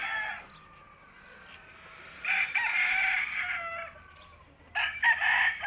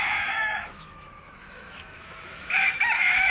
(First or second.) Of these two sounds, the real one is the first